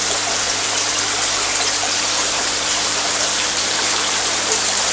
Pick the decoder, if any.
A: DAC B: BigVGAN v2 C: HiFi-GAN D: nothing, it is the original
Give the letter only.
B